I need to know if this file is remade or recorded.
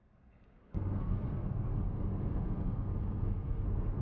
remade